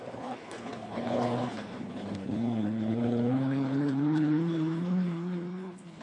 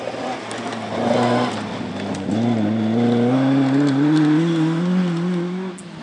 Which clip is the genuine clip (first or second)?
second